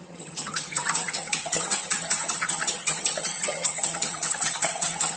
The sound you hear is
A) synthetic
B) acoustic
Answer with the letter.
A